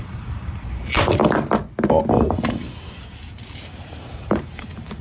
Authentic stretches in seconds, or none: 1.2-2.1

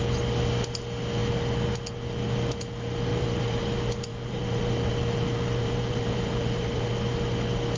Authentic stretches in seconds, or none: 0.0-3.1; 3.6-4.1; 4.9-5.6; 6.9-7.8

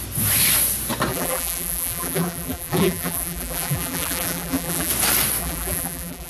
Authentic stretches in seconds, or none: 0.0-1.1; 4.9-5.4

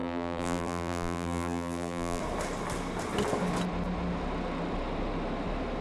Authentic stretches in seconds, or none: 2.2-5.8